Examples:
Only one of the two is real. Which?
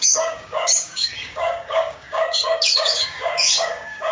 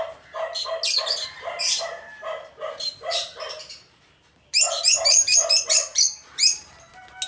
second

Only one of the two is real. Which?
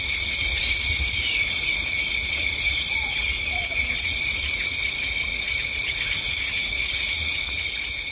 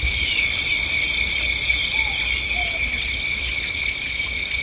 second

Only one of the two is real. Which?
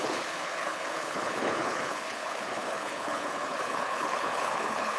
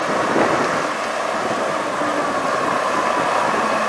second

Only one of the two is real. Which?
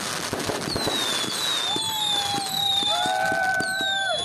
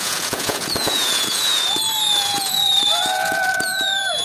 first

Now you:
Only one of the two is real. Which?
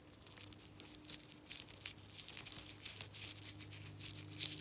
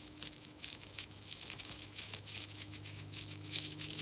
first